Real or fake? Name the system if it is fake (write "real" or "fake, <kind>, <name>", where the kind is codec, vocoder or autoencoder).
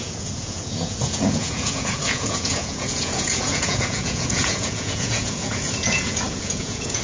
fake, vocoder, Vocos